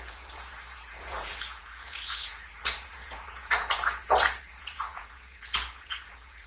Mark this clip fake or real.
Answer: fake